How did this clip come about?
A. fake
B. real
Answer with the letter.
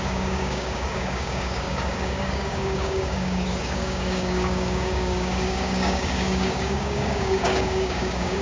A